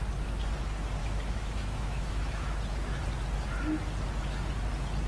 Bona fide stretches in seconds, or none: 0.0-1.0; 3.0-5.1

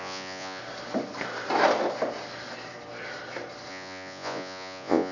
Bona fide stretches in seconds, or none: 0.6-3.7

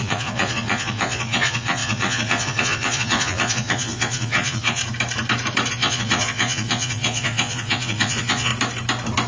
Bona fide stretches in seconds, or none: 4.8-5.7; 8.5-9.3

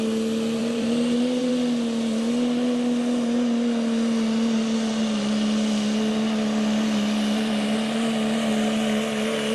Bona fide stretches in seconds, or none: 0.0-0.6; 1.5-9.5